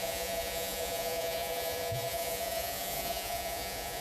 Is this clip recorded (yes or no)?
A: no